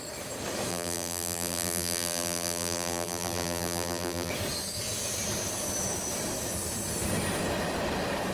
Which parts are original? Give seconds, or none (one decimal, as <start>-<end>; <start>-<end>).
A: 0.0-0.7; 4.3-8.3